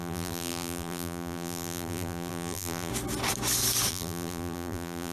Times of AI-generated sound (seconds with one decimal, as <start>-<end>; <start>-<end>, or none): 0.0-2.9; 3.9-5.1